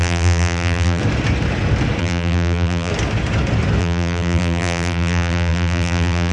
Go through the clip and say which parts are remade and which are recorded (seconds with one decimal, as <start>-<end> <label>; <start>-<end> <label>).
0.0-1.0 remade; 1.0-2.0 recorded; 2.0-2.9 remade; 2.9-3.8 recorded; 3.8-6.3 remade